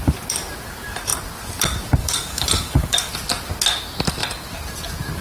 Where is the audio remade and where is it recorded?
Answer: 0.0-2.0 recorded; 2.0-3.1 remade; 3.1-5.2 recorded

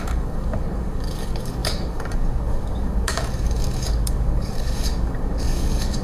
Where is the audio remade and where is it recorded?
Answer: 0.0-6.0 remade

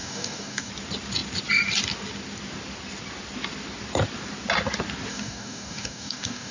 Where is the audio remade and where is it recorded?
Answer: 0.0-0.7 remade; 0.7-5.1 recorded; 5.1-6.5 remade

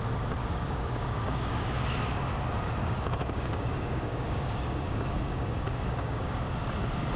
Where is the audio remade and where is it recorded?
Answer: 0.0-0.4 recorded; 0.4-1.9 remade; 1.9-2.8 recorded; 2.8-6.4 remade; 6.4-7.2 recorded